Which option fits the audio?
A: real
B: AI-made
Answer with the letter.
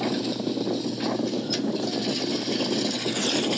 A